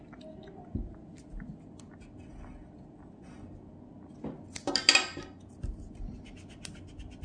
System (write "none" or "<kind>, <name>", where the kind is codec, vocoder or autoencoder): none